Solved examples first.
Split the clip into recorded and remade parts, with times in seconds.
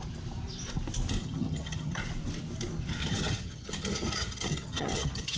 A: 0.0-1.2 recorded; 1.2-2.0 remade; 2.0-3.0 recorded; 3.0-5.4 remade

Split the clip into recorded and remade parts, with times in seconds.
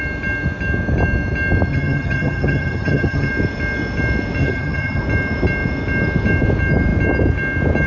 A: 0.0-1.7 recorded; 1.7-3.3 remade; 3.3-4.4 recorded; 4.4-5.0 remade; 5.0-7.9 recorded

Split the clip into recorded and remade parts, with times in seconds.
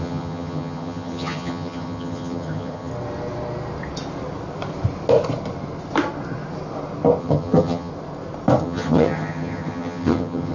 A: 0.0-2.9 remade; 2.9-7.2 recorded; 7.2-7.9 remade; 7.9-8.6 recorded; 8.6-10.5 remade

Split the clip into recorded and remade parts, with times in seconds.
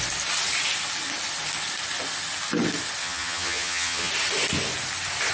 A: 0.0-3.0 recorded; 3.0-4.1 remade; 4.1-5.3 recorded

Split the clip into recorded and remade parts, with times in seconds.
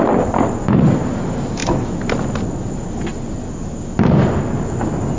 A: 0.0-5.2 recorded